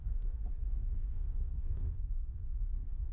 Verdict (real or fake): fake